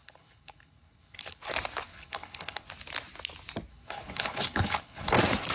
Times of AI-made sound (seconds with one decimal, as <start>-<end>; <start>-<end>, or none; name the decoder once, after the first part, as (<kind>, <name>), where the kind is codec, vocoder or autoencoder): 0.0-1.5 (codec, HILCodec); 1.9-2.7; 3.7-5.1